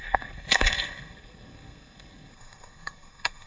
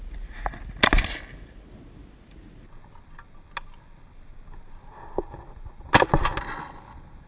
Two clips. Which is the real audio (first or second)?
second